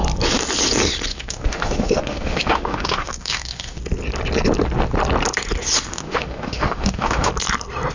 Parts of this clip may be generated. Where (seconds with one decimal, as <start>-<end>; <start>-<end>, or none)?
1.1-3.8; 5.9-7.3